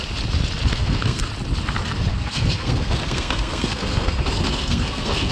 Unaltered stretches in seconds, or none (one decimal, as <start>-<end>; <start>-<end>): 0.0-0.7; 1.3-2.1